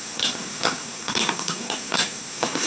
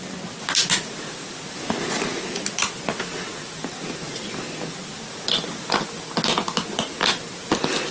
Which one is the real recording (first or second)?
second